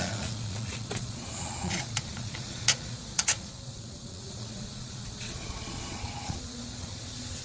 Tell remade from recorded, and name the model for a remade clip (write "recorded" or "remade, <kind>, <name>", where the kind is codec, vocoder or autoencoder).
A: remade, vocoder, Vocos